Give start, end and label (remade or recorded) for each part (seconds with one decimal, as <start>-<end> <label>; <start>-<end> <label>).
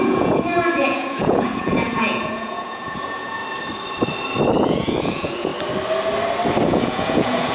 0.0-3.4 remade; 3.4-4.6 recorded; 4.6-5.5 remade; 5.5-6.7 recorded; 6.7-7.5 remade